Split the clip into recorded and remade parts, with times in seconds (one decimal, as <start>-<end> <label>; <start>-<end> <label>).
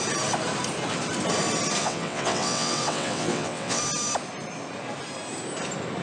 0.0-1.8 recorded; 1.8-3.8 remade; 3.8-6.0 recorded